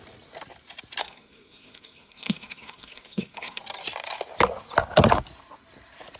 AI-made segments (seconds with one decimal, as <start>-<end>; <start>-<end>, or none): 1.0-3.6